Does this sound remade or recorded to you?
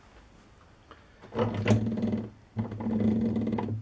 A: recorded